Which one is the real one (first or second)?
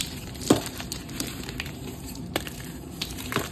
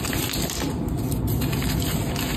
second